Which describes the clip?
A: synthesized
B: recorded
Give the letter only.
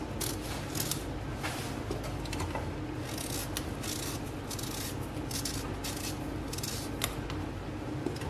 B